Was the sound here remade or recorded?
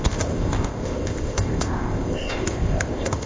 remade